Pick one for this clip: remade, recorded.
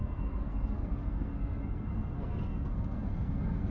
remade